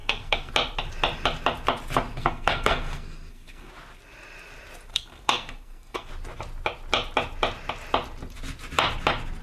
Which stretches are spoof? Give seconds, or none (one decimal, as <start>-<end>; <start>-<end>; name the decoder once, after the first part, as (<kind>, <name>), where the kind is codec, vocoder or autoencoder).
0.0-0.5 (codec, SNAC); 2.2-3.7; 4.9-6.1